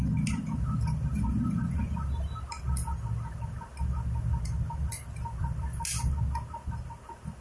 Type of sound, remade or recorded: recorded